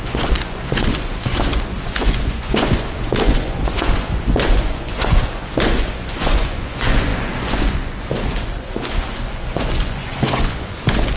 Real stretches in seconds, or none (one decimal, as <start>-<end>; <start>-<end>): none